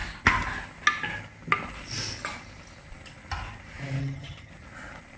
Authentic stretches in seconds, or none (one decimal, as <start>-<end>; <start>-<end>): 0.0-4.0; 4.5-5.2